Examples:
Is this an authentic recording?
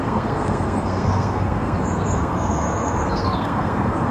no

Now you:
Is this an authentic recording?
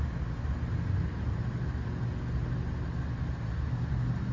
yes